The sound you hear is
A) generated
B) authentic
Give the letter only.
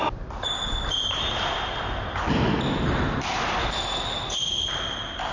B